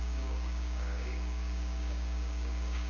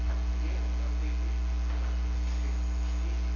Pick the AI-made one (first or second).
first